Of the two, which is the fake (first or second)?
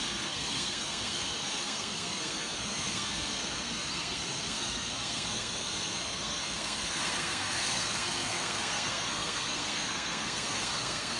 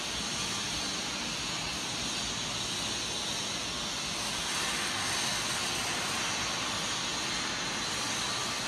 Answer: first